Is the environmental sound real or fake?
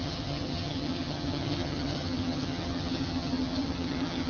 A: fake